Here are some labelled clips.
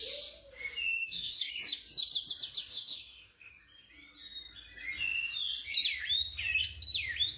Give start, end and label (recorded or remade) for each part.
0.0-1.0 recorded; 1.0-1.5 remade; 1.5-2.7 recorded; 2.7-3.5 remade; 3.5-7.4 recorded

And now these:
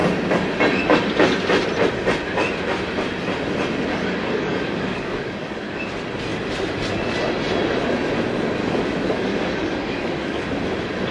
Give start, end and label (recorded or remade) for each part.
0.0-3.9 recorded; 3.9-5.8 remade; 5.8-8.6 recorded; 8.6-10.4 remade; 10.4-11.1 recorded

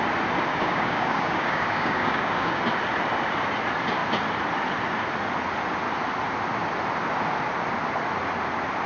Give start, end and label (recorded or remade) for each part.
0.0-0.5 recorded; 0.5-2.6 remade; 2.6-8.9 recorded

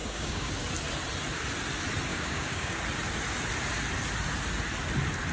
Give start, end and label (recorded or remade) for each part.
0.0-0.5 remade; 0.5-2.1 recorded; 2.1-2.8 remade; 2.8-5.3 recorded

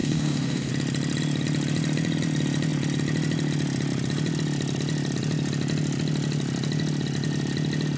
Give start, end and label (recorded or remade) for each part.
0.0-0.7 remade; 0.7-8.0 recorded

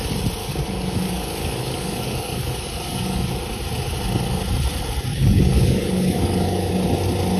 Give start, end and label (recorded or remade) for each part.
0.0-0.4 recorded; 0.4-3.4 remade; 3.4-5.1 recorded; 5.1-6.7 remade; 6.7-7.4 recorded